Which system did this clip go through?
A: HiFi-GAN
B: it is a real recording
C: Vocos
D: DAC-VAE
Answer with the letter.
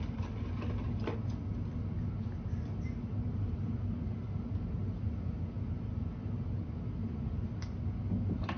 B